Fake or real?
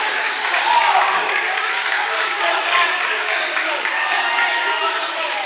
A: fake